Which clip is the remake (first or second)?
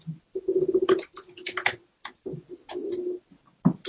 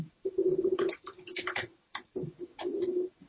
second